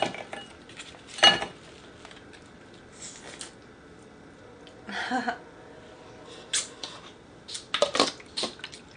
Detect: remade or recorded recorded